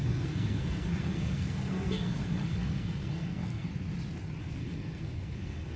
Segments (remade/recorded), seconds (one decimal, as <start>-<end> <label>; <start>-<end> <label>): 0.0-3.7 remade; 3.7-4.4 recorded; 4.4-5.8 remade